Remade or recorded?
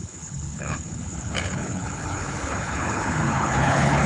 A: remade